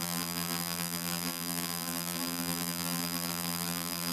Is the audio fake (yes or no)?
yes